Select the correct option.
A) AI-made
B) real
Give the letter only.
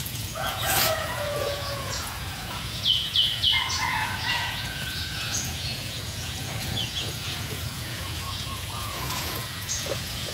A